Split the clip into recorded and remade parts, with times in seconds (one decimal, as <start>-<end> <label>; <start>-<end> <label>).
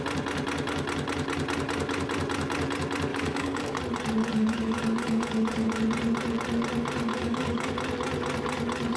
0.0-3.1 recorded; 3.1-3.8 remade; 3.8-4.2 recorded; 4.2-5.8 remade; 5.8-7.1 recorded; 7.1-7.7 remade; 7.7-9.0 recorded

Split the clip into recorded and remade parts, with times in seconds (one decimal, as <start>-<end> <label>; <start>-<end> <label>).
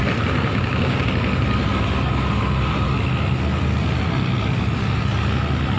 0.0-0.5 recorded; 0.5-1.1 remade; 1.1-5.8 recorded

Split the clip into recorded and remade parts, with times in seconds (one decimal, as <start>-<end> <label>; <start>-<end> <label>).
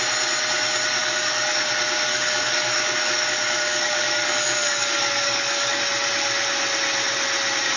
0.0-1.0 recorded; 1.0-1.7 remade; 1.7-2.1 recorded; 2.1-5.8 remade; 5.8-7.8 recorded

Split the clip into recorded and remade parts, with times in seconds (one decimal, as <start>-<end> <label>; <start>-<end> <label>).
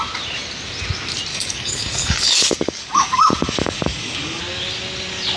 0.0-1.3 recorded; 1.3-4.4 remade; 4.4-5.4 recorded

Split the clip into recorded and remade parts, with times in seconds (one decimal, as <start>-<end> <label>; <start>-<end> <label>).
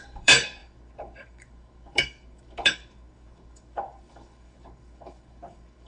0.0-5.9 remade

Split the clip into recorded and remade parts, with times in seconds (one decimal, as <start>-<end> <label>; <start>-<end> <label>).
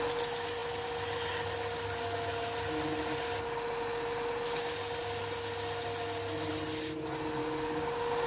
0.0-7.4 recorded; 7.4-8.3 remade